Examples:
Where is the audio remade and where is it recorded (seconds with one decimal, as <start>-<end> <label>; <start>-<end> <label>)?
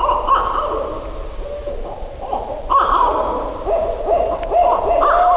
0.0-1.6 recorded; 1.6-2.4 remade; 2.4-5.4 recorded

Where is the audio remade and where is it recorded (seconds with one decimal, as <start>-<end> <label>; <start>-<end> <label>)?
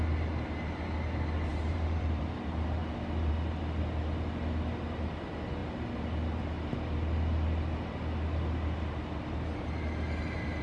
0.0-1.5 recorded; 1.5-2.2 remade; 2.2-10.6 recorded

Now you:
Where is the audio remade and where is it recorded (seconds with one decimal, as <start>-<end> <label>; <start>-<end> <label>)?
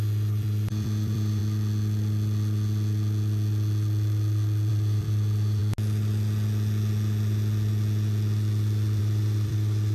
0.0-1.4 remade; 1.4-4.7 recorded; 4.7-5.6 remade; 5.6-9.0 recorded; 9.0-9.9 remade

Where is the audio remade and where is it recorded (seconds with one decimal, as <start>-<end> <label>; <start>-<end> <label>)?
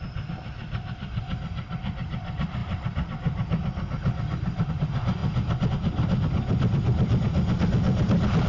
0.0-5.2 remade; 5.2-5.7 recorded; 5.7-8.5 remade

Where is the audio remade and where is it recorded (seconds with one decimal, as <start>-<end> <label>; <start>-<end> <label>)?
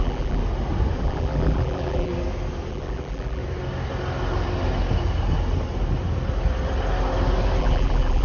0.0-0.4 remade; 0.4-1.0 recorded; 1.0-2.1 remade; 2.1-2.7 recorded; 2.7-3.4 remade; 3.4-7.6 recorded; 7.6-8.2 remade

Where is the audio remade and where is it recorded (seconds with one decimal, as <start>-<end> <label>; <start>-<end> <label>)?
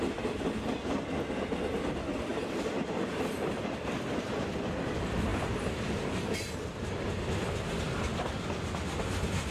0.0-2.3 recorded; 2.3-3.1 remade; 3.1-5.3 recorded; 5.3-7.3 remade; 7.3-9.5 recorded